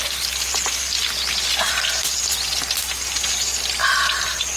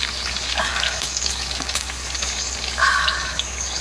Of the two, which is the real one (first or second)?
first